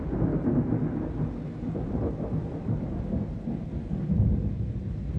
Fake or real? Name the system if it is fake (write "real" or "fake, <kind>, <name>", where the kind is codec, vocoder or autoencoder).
real